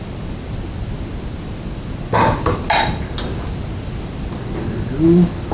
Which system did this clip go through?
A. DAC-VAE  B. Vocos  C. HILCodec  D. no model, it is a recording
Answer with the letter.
D